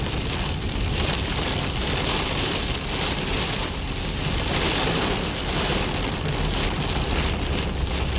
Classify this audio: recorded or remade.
recorded